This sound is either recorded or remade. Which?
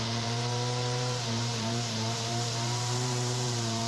remade